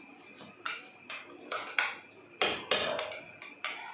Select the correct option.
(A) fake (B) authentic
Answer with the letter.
B